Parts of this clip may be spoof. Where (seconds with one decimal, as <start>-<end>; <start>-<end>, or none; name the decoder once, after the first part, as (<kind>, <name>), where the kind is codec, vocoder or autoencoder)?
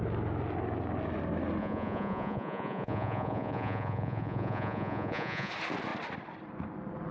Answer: 1.6-5.5 (vocoder, Vocos)